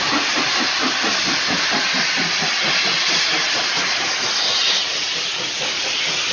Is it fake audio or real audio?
real